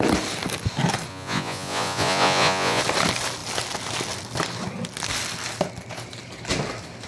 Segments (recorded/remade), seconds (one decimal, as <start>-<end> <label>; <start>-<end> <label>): 0.0-1.1 recorded; 1.1-2.8 remade; 2.8-7.1 recorded

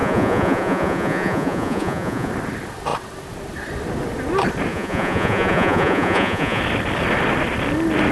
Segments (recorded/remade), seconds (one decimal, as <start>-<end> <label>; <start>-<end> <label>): 0.0-2.3 remade; 2.3-4.7 recorded; 4.7-6.6 remade; 6.6-8.1 recorded

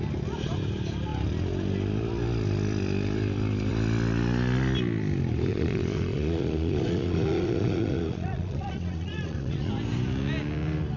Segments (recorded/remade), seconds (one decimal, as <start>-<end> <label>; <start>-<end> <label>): 0.0-5.5 recorded; 5.5-9.7 remade; 9.7-11.0 recorded

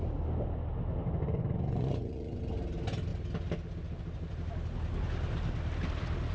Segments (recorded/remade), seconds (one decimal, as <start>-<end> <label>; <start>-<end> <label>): 0.0-1.2 recorded; 1.2-2.4 remade; 2.4-6.3 recorded